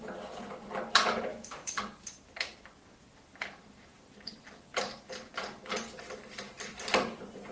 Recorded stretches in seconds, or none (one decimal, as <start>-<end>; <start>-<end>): 0.0-1.3; 1.8-7.5